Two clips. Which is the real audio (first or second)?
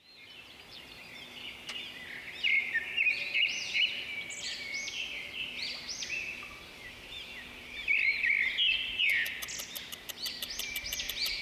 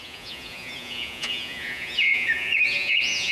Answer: first